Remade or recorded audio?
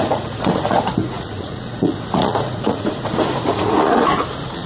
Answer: remade